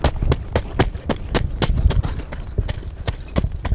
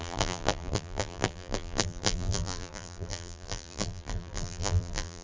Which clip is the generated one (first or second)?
second